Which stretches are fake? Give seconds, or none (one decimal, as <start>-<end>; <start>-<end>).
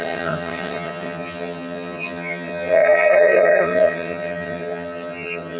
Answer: 0.0-5.6